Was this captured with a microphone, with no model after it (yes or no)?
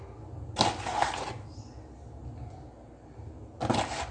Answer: yes